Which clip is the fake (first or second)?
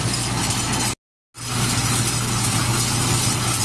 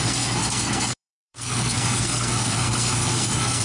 second